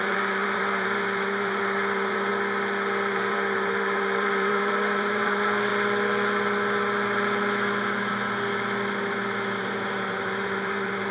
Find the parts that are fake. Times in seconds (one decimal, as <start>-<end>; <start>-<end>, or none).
0.0-2.3; 3.1-5.7; 9.6-11.1